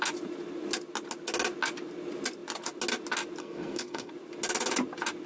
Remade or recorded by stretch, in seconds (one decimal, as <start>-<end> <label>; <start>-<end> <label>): 0.0-3.4 recorded; 3.4-4.1 remade; 4.1-5.3 recorded